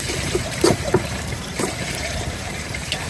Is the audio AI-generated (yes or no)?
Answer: yes